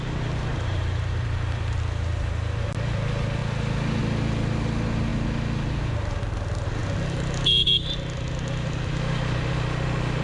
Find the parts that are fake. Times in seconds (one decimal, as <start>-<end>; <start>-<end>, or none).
0.5-1.8